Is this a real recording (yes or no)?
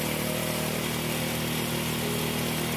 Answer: yes